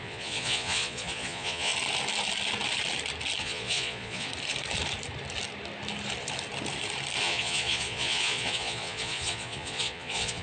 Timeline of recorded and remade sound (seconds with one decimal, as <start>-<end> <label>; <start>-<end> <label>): 0.0-1.7 remade; 1.7-3.4 recorded; 3.4-4.3 remade; 4.3-7.2 recorded; 7.2-10.4 remade